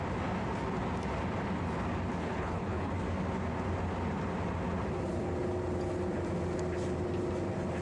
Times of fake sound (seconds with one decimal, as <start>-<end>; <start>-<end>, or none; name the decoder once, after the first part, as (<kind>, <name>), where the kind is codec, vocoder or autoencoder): 2.2-2.9 (codec, HILCodec)